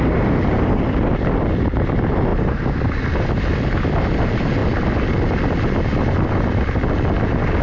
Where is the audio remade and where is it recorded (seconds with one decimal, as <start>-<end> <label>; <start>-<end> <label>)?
0.0-7.6 recorded